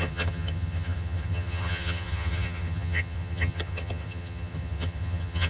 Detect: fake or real fake